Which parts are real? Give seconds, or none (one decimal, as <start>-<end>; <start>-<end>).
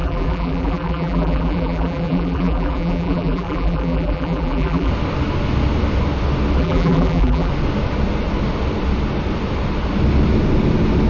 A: 4.9-6.6; 7.5-11.1